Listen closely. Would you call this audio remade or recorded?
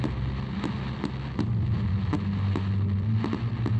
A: recorded